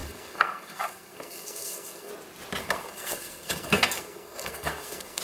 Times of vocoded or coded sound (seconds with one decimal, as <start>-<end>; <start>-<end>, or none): 0.0-2.1; 2.6-5.2